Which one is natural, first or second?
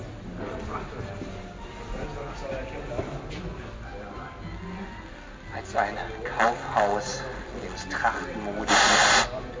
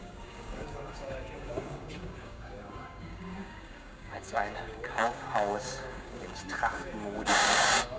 first